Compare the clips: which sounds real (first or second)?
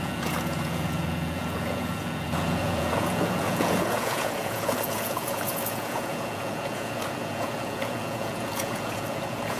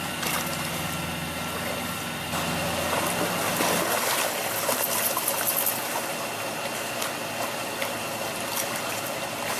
second